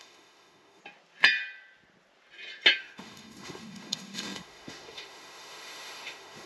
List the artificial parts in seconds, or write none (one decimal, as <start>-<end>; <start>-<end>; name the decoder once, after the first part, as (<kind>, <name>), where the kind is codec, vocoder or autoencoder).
0.0-0.8 (autoencoder, DAC-VAE); 2.8-6.5